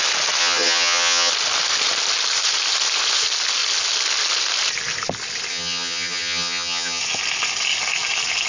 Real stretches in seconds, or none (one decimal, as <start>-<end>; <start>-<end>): 0.0-0.4; 1.3-5.5; 7.0-8.5